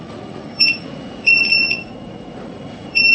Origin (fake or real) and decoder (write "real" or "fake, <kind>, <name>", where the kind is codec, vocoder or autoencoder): fake, vocoder, Vocos